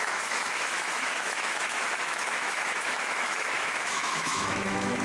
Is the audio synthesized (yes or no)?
yes